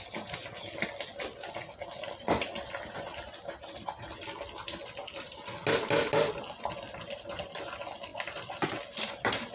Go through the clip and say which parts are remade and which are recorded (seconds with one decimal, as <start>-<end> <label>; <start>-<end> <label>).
0.0-9.5 recorded